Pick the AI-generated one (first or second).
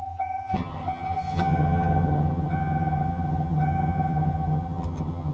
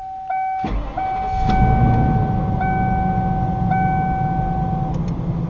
first